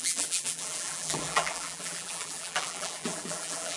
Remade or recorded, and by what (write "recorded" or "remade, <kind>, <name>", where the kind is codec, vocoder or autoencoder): remade, vocoder, BigVGAN v2